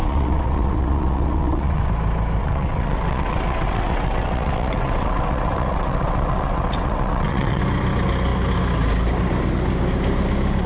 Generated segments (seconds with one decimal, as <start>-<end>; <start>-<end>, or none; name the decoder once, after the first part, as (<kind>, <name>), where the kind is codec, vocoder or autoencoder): 0.0-1.9 (vocoder, WaveNeXt); 2.4-7.6